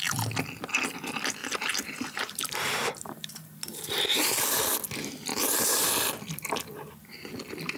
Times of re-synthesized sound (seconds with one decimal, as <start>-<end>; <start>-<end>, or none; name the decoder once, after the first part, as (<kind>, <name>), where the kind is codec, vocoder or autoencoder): 1.4-4.7 (vocoder, BigVGAN v2); 5.3-5.9